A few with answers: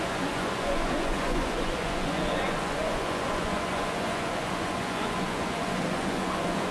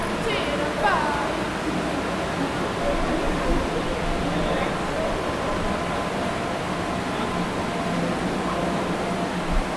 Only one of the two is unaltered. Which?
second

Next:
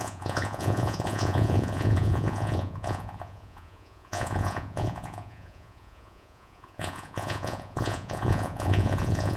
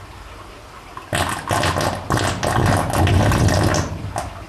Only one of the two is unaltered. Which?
second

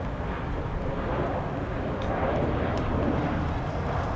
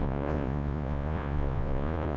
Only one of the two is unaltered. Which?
first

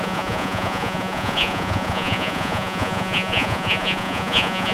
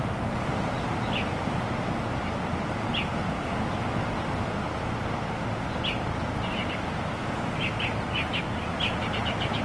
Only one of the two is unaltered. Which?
second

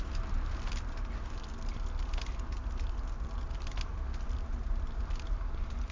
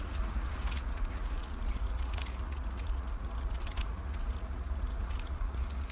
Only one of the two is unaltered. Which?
first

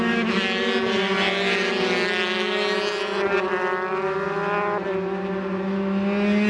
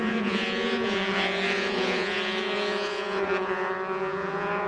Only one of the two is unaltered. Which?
first